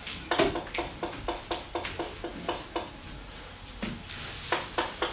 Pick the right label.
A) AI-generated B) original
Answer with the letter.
B